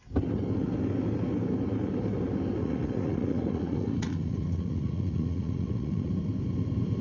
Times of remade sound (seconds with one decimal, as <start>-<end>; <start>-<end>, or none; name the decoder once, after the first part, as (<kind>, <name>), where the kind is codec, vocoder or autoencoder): 2.6-6.1 (vocoder, Vocos)